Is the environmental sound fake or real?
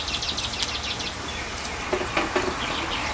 real